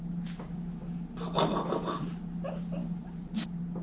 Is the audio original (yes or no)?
yes